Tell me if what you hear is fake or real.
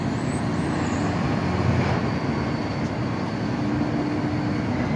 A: real